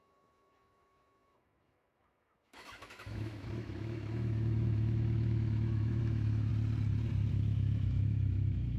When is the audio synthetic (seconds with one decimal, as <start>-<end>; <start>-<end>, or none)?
0.0-6.5; 7.3-8.8